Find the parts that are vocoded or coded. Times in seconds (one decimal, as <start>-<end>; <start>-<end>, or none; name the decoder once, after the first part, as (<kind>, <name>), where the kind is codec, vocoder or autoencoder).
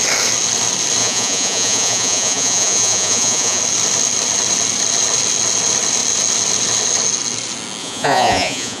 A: 1.0-3.6 (vocoder, Vocos); 7.8-8.8